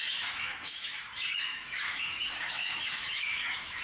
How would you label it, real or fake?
fake